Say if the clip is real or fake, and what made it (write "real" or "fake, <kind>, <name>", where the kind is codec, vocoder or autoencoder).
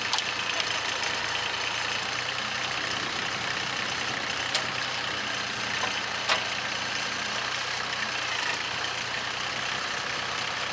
real